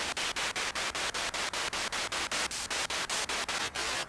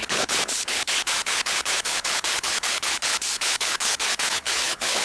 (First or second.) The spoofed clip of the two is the second